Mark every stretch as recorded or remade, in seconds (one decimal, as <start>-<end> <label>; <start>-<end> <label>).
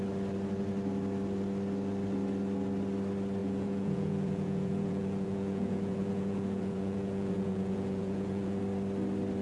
0.0-3.4 recorded; 3.4-8.6 remade; 8.6-9.4 recorded